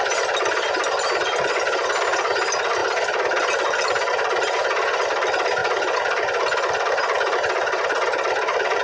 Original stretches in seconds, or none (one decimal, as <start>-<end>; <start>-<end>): 0.0-8.8